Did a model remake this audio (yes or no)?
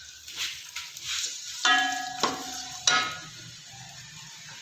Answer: no